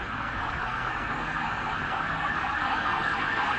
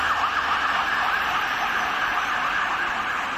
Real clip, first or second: second